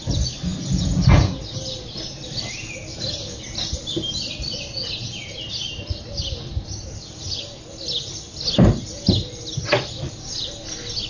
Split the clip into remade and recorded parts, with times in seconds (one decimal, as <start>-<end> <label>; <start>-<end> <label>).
0.0-0.5 recorded; 0.5-1.4 remade; 1.4-11.1 recorded